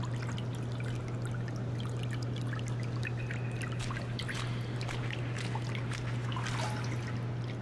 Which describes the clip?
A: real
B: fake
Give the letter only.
A